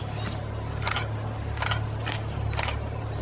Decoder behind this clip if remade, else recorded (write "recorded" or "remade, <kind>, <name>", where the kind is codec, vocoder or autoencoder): recorded